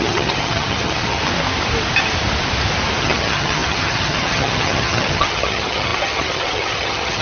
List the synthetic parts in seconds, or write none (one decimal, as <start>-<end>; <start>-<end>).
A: 0.0-1.2; 3.0-7.2